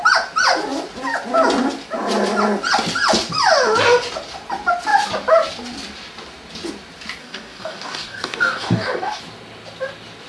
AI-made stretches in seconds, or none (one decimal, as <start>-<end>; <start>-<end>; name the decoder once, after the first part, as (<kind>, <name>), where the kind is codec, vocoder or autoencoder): 7.2-9.2 (codec, DAC)